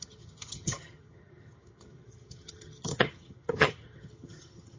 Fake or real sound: fake